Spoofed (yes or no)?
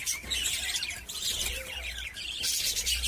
no